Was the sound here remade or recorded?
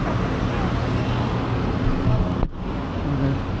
recorded